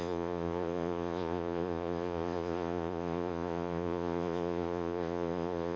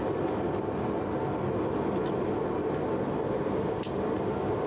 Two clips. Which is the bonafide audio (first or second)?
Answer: second